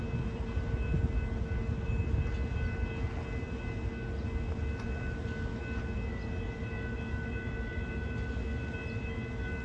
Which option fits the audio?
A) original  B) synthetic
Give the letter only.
A